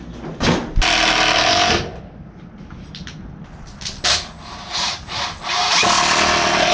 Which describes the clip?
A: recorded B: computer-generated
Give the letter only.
A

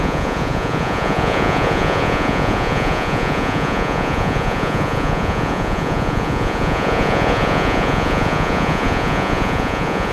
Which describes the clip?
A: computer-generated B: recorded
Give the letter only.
A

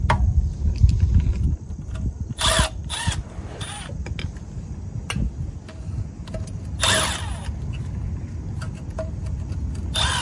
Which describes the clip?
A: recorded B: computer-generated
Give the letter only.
A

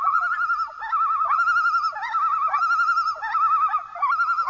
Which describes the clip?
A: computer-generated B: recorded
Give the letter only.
B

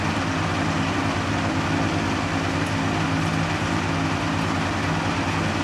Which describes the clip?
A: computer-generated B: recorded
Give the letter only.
B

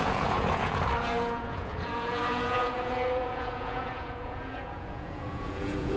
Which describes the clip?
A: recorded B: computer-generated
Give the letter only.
B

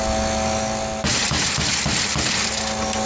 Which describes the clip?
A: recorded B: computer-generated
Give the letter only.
A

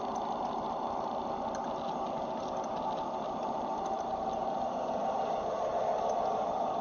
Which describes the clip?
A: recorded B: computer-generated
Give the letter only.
A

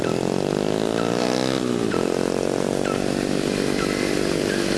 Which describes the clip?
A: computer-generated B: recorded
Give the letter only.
B